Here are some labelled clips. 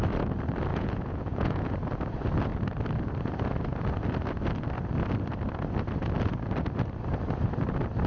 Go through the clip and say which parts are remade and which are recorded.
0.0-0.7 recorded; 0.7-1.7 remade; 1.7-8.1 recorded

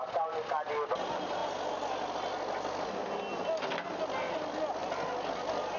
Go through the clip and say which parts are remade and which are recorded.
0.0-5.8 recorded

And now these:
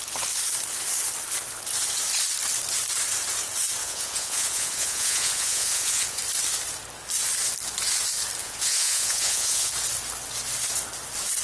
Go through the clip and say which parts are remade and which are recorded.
0.0-3.8 recorded; 3.8-6.2 remade; 6.2-8.4 recorded; 8.4-9.7 remade; 9.7-11.4 recorded

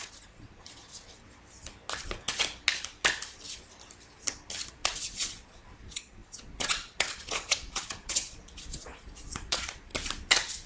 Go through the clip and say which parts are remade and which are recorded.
0.0-0.9 remade; 0.9-4.7 recorded; 4.7-9.9 remade; 9.9-10.7 recorded